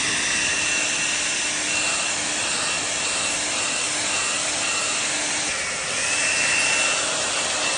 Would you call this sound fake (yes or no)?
no